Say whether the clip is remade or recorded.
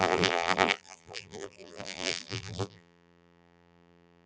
remade